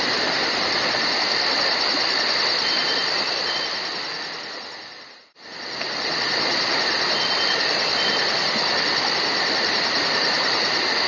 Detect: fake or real real